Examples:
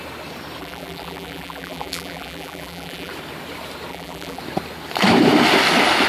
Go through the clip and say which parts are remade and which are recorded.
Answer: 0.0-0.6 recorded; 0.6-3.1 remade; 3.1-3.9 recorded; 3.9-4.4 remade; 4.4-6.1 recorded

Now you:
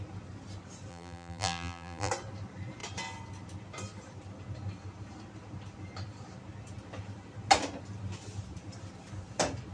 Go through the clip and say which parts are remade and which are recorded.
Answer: 0.0-0.9 recorded; 0.9-2.1 remade; 2.1-9.7 recorded